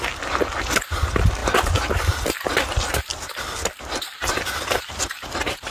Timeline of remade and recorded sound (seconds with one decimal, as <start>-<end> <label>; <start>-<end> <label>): 0.0-5.7 recorded